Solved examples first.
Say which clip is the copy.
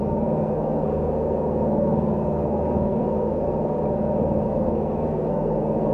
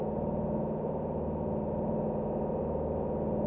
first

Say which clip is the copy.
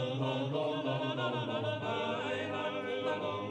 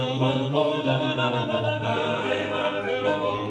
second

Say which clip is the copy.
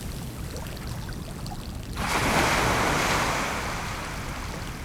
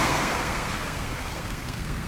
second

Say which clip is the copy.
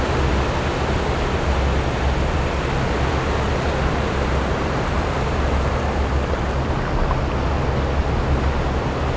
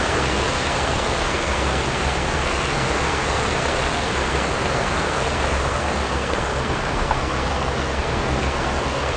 second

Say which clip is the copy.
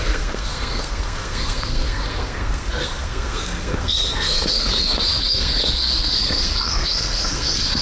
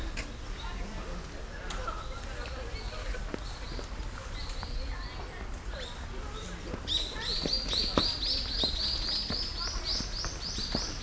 first